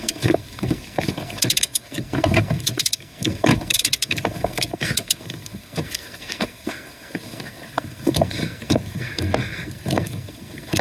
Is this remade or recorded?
remade